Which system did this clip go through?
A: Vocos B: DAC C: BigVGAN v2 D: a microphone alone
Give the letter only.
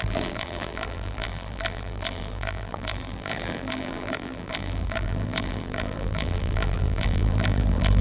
C